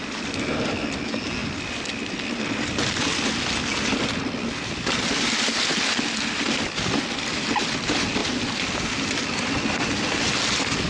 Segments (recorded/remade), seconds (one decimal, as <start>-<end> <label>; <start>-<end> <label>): 0.0-10.9 recorded